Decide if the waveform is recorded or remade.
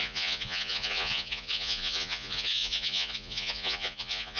remade